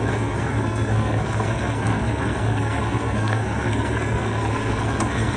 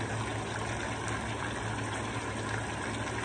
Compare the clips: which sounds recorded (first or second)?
second